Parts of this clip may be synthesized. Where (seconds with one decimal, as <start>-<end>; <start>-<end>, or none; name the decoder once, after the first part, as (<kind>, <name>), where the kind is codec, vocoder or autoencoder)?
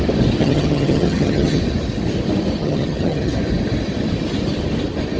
0.4-1.6 (vocoder, HiFi-GAN); 2.6-3.3